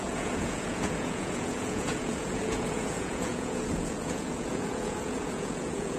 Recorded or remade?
remade